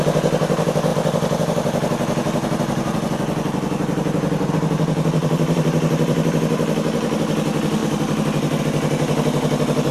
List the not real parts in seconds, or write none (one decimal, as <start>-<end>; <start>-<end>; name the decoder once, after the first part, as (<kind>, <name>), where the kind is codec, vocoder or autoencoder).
5.2-6.4 (vocoder, BigVGAN v2); 7.8-8.6